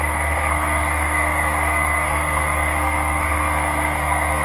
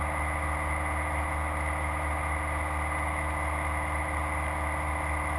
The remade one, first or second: first